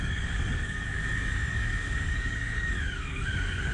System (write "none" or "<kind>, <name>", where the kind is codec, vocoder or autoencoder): codec, DAC